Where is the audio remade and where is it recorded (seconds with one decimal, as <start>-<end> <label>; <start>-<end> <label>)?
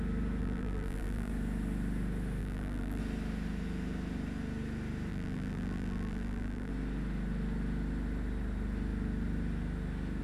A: 0.0-0.4 recorded; 0.4-1.3 remade; 1.3-2.4 recorded; 2.4-3.0 remade; 3.0-5.1 recorded; 5.1-6.7 remade; 6.7-10.2 recorded